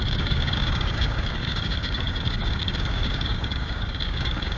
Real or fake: fake